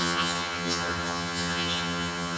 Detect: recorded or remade remade